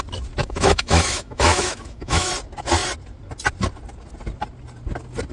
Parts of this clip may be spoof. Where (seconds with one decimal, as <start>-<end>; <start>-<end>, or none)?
0.4-2.3